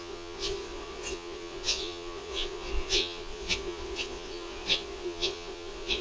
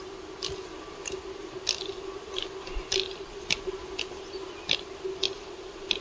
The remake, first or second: first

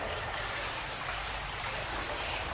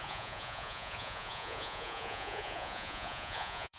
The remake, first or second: second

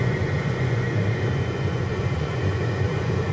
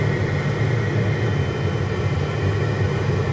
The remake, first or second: first